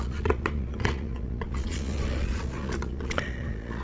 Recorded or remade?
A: remade